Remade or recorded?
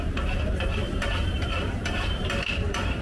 remade